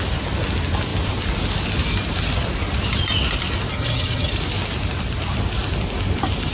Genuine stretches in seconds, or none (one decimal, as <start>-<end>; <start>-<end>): 0.0-3.7; 4.3-6.5